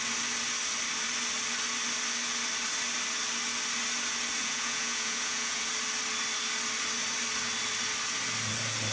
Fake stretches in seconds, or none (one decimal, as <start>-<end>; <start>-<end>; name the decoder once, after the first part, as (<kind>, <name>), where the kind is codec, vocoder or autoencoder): 4.4-5.7 (vocoder, Vocos)